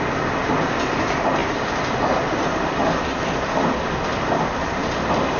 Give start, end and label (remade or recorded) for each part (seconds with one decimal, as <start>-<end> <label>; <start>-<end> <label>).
0.0-5.4 recorded